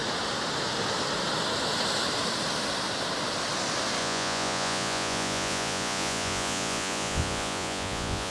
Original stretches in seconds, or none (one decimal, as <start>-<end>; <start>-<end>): 0.0-4.0